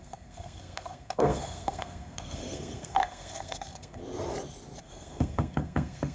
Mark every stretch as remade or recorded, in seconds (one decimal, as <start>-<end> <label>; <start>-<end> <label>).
0.0-4.0 remade; 4.0-4.8 recorded; 4.8-6.1 remade

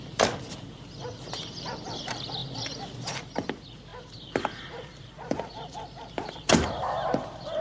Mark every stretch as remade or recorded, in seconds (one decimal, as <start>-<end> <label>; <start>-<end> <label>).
0.0-7.6 remade

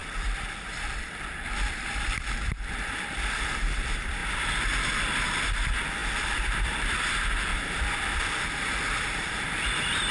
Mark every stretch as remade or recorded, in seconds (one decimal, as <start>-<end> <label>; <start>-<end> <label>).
0.0-4.2 remade; 4.2-5.5 recorded; 5.5-10.1 remade

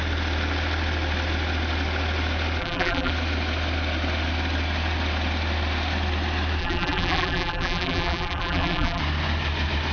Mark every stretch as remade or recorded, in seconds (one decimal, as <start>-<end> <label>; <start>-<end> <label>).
0.0-2.6 recorded; 2.6-3.1 remade; 3.1-6.6 recorded; 6.6-9.0 remade; 9.0-9.9 recorded